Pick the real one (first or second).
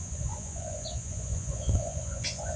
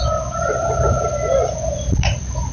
second